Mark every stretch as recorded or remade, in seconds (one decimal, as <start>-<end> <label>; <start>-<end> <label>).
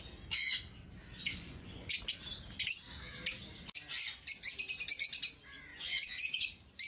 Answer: 0.0-1.3 recorded; 1.3-1.9 remade; 1.9-5.7 recorded; 5.7-6.4 remade; 6.4-6.9 recorded